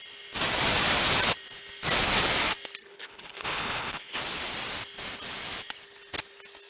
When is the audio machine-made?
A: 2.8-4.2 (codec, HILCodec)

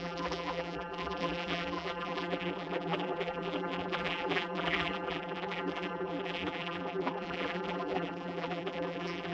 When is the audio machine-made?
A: 0.0-9.3 (vocoder, BigVGAN v2)

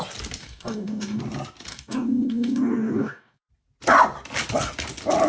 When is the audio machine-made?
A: 0.4-1.2 (codec, DAC); 1.7-3.5

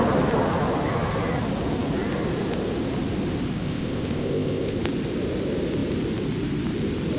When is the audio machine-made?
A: 3.6-4.8 (codec, ZipCodec)

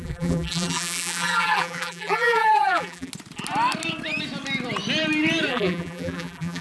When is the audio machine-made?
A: 0.0-3.1 (vocoder, BigVGAN v2); 5.5-6.6

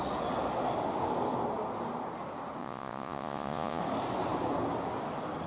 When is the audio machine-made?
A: 2.6-3.8 (vocoder, Vocos)